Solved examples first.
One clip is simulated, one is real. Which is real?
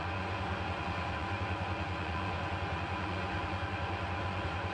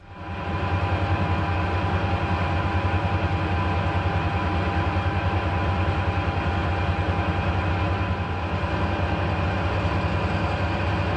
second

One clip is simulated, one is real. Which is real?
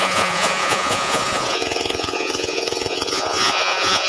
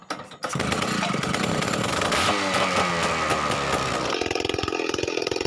second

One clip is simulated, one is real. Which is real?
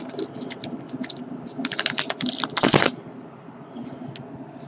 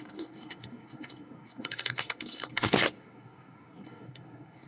first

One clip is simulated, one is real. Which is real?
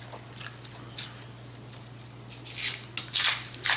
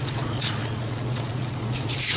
first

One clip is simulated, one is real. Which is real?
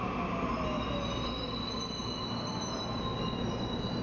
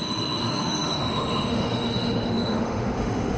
first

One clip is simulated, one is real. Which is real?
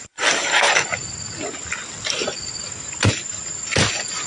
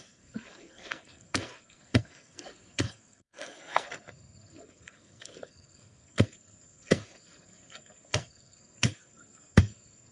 first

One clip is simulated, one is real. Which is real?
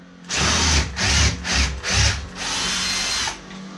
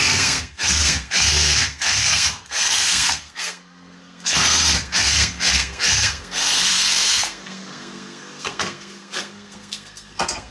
first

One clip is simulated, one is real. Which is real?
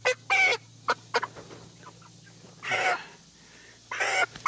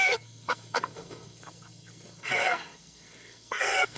first